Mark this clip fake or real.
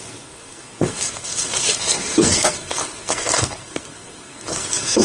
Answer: fake